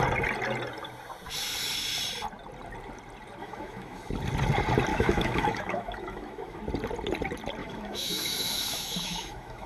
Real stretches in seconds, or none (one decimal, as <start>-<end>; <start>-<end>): 0.0-3.4; 4.1-4.9; 6.6-7.6